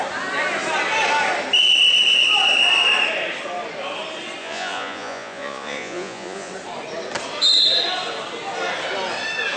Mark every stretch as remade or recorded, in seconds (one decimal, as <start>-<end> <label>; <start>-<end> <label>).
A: 0.0-4.4 recorded; 4.4-6.5 remade; 6.5-9.6 recorded